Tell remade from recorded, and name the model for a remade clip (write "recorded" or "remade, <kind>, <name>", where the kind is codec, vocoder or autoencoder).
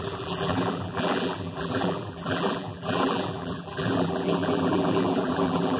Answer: remade, vocoder, BigVGAN v2